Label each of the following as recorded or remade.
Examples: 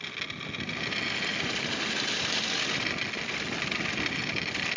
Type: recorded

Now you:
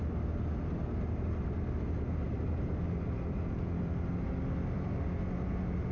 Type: recorded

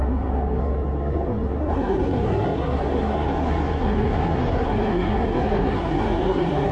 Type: remade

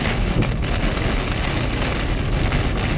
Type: recorded